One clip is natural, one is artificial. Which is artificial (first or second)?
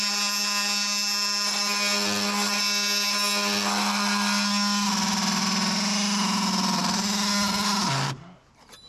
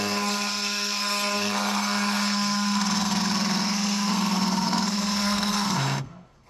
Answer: second